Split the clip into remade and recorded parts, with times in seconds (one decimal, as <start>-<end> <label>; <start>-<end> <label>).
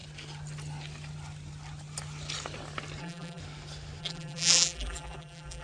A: 0.0-3.0 recorded; 3.0-3.4 remade; 3.4-4.0 recorded; 4.0-5.6 remade